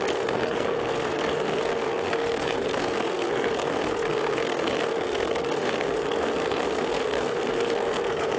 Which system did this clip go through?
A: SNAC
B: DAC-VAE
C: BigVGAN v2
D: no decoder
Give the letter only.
A